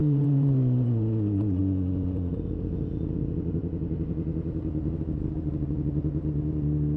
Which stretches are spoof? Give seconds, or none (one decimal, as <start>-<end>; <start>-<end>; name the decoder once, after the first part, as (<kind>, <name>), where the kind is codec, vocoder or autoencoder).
0.0-1.6 (vocoder, BigVGAN v2)

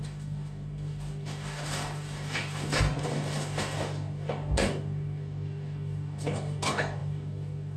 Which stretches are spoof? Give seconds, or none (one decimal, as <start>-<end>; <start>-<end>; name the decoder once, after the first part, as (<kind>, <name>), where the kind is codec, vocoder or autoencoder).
0.0-7.8 (codec, DAC)

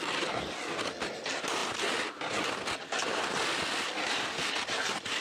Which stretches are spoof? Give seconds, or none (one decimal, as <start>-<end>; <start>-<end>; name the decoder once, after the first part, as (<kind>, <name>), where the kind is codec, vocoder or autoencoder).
none